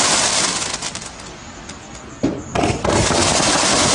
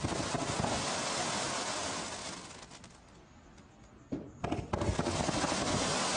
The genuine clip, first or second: second